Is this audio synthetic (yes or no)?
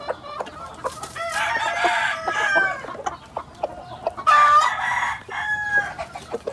no